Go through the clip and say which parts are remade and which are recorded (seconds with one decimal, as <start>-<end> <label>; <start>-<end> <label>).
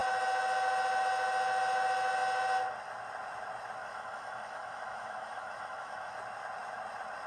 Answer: 0.0-3.8 recorded; 3.8-6.1 remade; 6.1-7.3 recorded